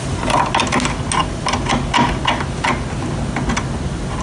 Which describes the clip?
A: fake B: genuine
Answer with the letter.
B